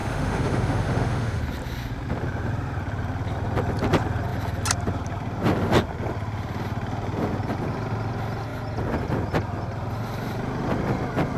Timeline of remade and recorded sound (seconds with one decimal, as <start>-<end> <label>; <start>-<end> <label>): 0.0-1.4 remade; 1.4-11.4 recorded